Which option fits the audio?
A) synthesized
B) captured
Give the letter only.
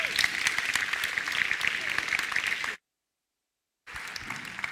B